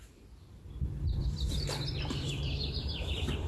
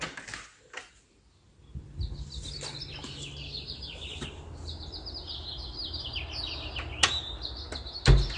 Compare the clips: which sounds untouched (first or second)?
second